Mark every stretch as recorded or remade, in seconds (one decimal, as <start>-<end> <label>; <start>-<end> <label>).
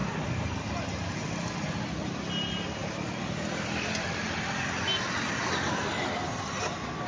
0.0-7.1 recorded